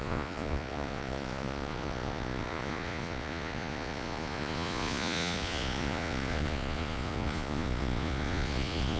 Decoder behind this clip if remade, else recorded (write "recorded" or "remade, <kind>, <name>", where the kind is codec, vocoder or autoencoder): remade, vocoder, Vocos